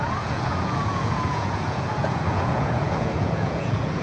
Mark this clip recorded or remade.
remade